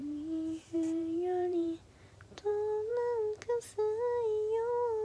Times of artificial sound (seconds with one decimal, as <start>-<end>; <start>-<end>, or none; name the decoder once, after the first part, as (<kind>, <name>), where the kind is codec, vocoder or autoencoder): 0.0-2.5 (vocoder, BigVGAN v2)